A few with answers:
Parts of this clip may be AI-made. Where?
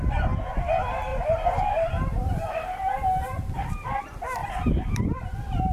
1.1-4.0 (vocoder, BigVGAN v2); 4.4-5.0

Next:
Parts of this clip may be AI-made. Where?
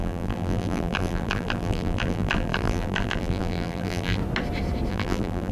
0.0-4.2 (vocoder, BigVGAN v2); 4.9-5.5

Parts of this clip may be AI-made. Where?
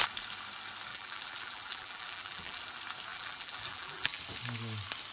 0.9-2.6 (vocoder, BigVGAN v2); 3.1-4.2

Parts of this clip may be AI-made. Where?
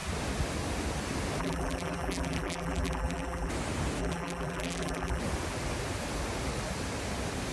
1.4-3.5 (vocoder, BigVGAN v2); 4.0-5.2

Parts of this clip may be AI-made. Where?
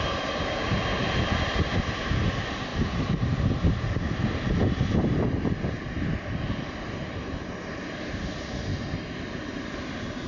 0.0-8.7 (vocoder, BigVGAN v2); 9.2-10.3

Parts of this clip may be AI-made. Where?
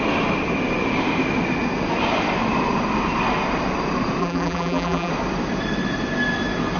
4.2-5.1 (vocoder, BigVGAN v2)